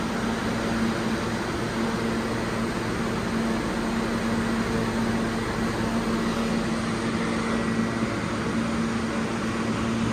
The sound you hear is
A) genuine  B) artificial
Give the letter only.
A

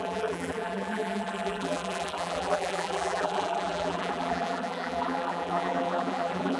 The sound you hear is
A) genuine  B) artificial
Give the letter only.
B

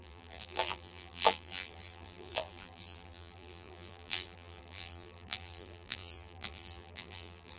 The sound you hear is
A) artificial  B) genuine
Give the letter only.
A